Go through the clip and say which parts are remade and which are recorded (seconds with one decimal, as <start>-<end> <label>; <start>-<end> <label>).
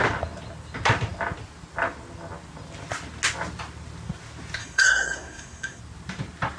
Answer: 0.0-4.6 recorded; 4.6-5.8 remade; 5.8-6.6 recorded